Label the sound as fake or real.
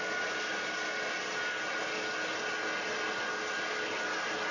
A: real